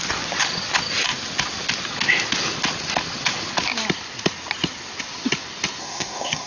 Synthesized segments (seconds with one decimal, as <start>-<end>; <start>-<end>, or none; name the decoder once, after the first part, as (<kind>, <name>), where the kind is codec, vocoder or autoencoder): 5.8-6.5 (codec, SNAC)